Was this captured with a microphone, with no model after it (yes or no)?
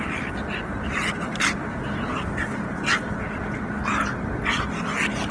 yes